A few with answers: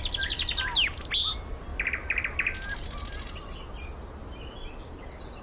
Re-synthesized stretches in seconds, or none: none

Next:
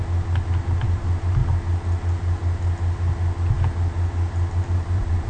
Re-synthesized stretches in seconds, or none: 0.8-1.4 (vocoder, BigVGAN v2); 4.6-5.3

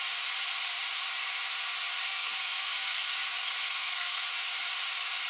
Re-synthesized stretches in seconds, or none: 2.1-3.1 (codec, SNAC); 3.6-4.2

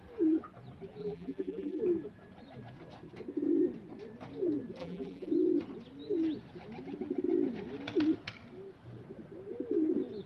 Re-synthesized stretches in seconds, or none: 1.0-1.8 (vocoder, BigVGAN v2); 4.8-5.3

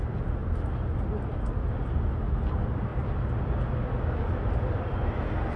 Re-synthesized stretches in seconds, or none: none

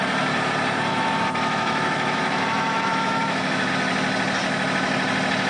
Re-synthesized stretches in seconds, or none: 0.9-3.7 (autoencoder, DAC-VAE)

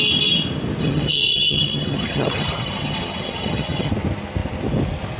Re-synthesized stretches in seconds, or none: 0.8-3.9 (vocoder, HiFi-GAN)

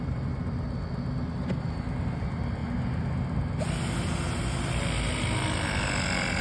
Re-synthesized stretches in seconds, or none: none